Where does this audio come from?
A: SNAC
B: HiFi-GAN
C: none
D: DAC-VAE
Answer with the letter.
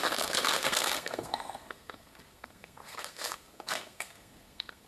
A